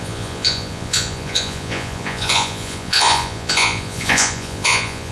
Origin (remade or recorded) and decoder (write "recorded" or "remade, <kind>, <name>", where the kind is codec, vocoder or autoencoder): remade, vocoder, Vocos